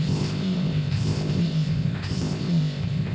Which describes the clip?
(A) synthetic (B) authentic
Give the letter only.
A